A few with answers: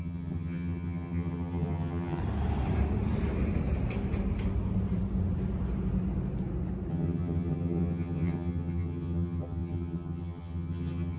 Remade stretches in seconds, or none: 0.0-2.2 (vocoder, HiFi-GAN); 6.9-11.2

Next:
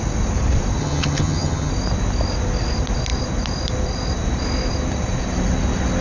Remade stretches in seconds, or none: 0.8-1.7 (vocoder, HiFi-GAN)

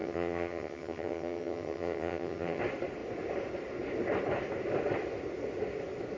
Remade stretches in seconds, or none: 0.0-2.6 (vocoder, HiFi-GAN)

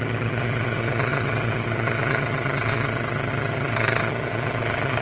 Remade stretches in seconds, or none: 0.0-5.0 (vocoder, HiFi-GAN)

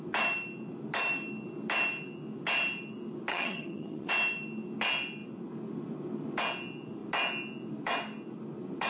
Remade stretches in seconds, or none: 3.3-4.1 (vocoder, HiFi-GAN)

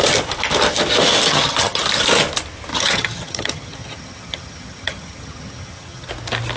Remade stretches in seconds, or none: 1.3-1.8 (vocoder, HiFi-GAN); 2.7-6.1

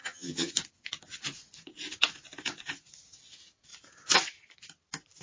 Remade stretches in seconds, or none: 0.0-0.5 (vocoder, HiFi-GAN)

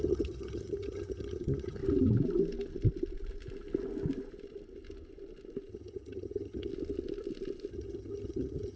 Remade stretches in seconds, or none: 0.0-1.8 (vocoder, HiFi-GAN); 5.7-6.7; 7.7-8.8